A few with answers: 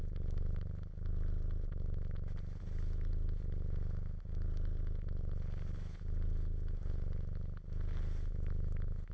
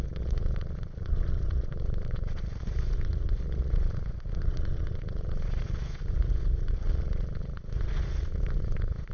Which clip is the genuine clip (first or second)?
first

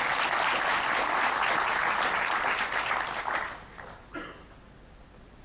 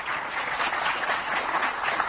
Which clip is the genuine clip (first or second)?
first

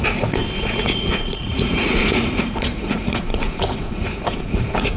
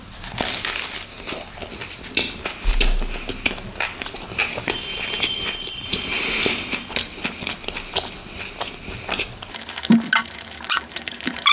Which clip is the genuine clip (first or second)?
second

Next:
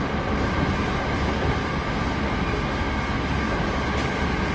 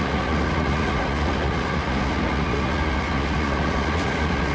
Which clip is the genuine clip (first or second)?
first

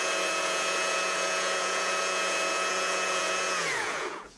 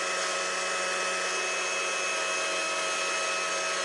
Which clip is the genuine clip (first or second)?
second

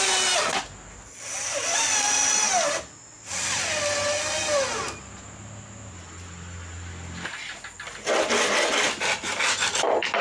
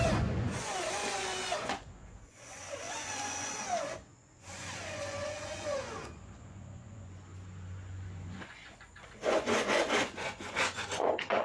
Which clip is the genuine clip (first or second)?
first